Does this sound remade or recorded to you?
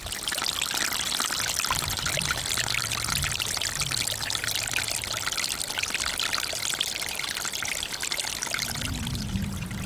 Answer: recorded